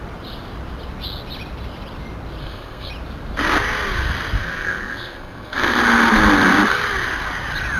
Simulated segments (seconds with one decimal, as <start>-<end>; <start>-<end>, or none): 2.4-2.9; 4.4-5.8